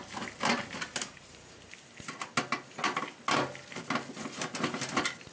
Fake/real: real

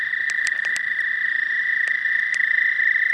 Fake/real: real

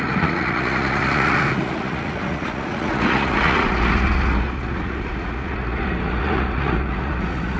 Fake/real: fake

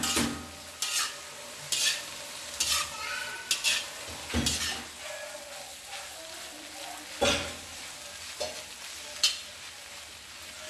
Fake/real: real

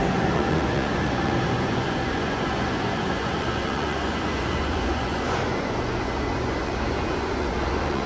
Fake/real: fake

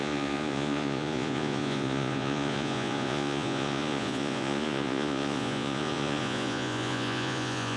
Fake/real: fake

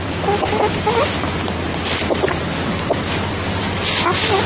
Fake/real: real